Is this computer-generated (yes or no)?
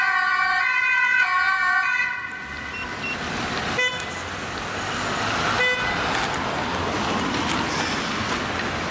no